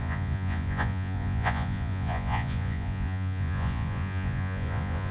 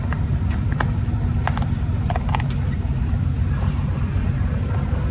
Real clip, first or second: second